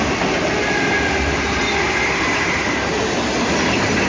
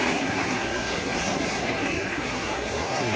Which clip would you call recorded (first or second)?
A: first